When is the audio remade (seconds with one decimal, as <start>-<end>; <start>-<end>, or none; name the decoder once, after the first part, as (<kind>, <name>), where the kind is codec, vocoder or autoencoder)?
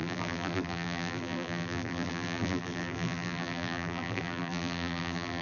0.0-5.4 (vocoder, BigVGAN v2)